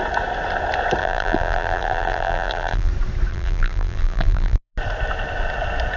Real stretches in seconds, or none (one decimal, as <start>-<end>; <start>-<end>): 0.0-1.0; 2.9-3.3; 4.7-6.0

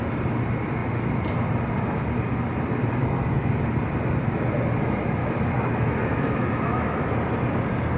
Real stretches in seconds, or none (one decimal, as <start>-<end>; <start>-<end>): 0.0-3.0; 3.5-5.2; 7.1-8.0

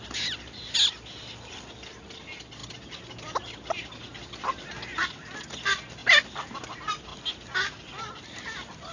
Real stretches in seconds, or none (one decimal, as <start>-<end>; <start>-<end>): 0.0-8.9

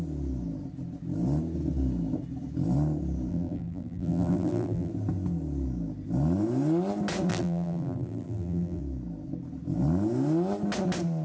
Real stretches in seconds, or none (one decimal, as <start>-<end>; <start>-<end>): 0.0-3.3; 4.9-7.3; 8.8-11.2